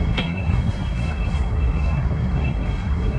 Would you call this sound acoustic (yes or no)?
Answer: no